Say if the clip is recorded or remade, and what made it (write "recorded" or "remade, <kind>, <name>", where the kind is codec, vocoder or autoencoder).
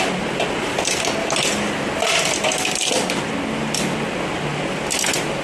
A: recorded